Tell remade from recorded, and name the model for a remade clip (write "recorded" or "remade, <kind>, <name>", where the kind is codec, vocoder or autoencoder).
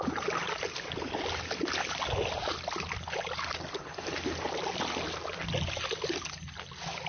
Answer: recorded